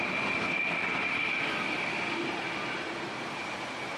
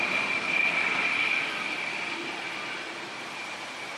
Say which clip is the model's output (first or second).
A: second